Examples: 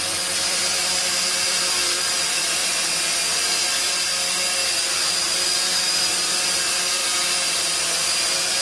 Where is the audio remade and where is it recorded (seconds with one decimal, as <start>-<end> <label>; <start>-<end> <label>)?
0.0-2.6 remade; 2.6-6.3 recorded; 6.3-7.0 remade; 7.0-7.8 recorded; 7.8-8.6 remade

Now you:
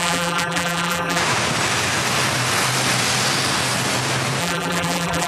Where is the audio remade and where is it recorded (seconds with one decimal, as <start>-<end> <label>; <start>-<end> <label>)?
0.0-1.2 remade; 1.2-4.4 recorded; 4.4-5.3 remade

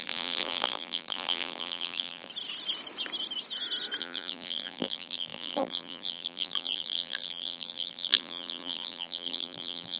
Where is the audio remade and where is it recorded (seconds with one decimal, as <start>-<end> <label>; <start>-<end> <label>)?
0.0-2.3 remade; 2.3-4.0 recorded; 4.0-10.0 remade